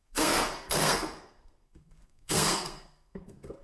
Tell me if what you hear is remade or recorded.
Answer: remade